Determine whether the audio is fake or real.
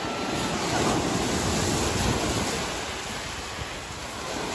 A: real